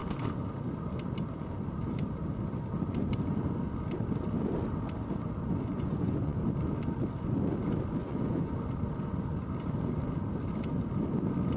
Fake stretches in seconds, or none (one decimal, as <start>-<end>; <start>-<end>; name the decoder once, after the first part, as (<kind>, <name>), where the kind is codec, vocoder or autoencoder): 5.7-6.4 (vocoder, Vocos); 8.0-8.5